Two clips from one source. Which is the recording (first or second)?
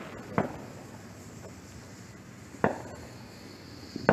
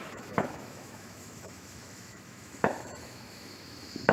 first